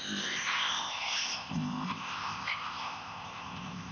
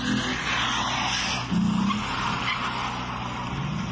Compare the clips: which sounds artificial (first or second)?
first